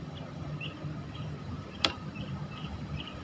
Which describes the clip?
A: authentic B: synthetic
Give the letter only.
B